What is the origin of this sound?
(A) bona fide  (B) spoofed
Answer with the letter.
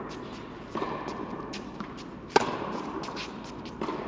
A